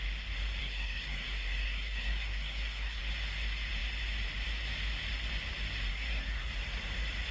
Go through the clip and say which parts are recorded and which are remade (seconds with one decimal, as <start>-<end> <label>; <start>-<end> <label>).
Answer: 0.0-0.6 recorded; 0.6-3.0 remade; 3.0-5.9 recorded; 5.9-6.5 remade; 6.5-7.3 recorded